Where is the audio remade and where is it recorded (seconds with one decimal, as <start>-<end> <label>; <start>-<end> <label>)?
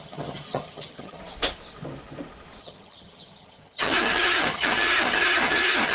0.0-1.2 remade; 1.2-2.6 recorded; 2.6-5.9 remade